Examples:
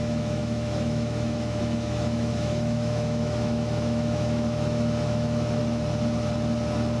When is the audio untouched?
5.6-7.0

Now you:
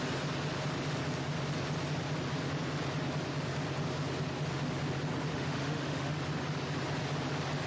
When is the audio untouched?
0.0-5.3; 6.2-7.7

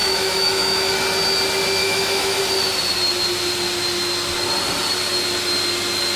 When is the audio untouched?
0.9-1.8; 2.4-6.2

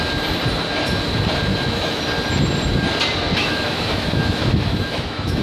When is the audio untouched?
0.0-1.5; 2.0-3.4

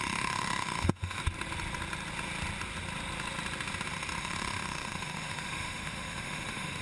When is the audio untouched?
1.2-4.2

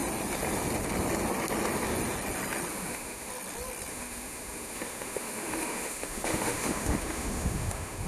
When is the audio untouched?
0.0-2.7; 3.3-3.9

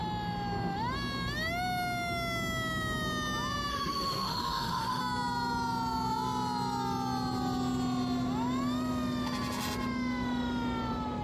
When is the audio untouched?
0.0-3.7; 5.0-11.2